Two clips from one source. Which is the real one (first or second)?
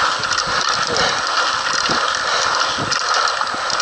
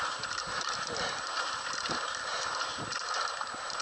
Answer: first